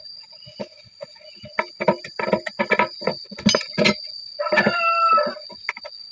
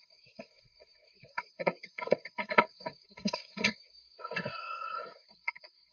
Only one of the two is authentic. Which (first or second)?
first